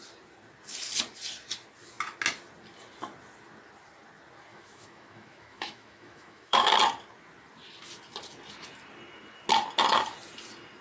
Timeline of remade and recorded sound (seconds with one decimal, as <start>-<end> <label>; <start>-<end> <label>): 0.0-4.5 recorded; 4.5-6.7 remade; 6.7-10.8 recorded